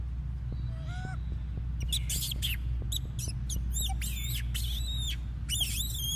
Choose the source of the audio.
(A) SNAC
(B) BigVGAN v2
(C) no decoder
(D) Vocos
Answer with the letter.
C